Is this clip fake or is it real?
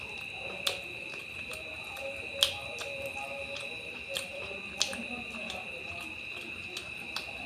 real